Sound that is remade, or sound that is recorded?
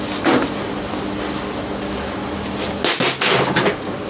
recorded